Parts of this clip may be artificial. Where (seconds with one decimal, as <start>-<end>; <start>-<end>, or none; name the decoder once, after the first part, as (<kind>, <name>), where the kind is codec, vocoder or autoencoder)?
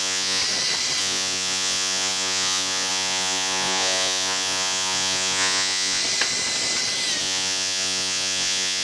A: 0.0-0.4 (vocoder, Vocos); 1.0-6.0; 7.2-8.8